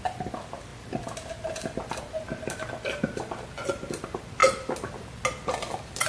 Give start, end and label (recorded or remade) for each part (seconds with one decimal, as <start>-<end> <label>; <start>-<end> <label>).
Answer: 0.0-6.1 recorded

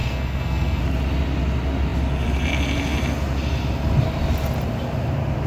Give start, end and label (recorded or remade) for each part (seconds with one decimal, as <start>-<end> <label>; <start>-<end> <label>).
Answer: 0.0-0.8 remade; 0.8-5.5 recorded

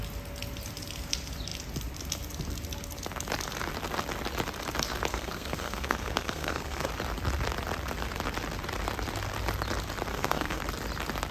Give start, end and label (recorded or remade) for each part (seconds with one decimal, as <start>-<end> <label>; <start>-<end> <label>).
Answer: 0.0-5.1 recorded; 5.1-6.9 remade; 6.9-10.1 recorded; 10.1-10.6 remade; 10.6-11.3 recorded

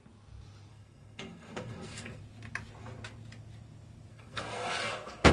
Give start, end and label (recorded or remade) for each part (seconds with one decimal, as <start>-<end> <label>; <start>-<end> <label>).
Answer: 0.0-0.7 recorded; 0.7-2.2 remade; 2.2-4.1 recorded; 4.1-5.3 remade

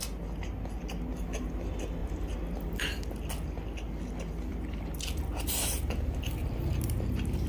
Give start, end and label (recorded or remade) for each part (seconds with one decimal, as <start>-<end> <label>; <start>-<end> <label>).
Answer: 0.0-7.5 recorded

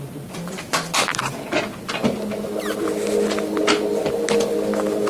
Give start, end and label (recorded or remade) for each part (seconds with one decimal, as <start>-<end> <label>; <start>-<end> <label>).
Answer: 0.0-5.1 recorded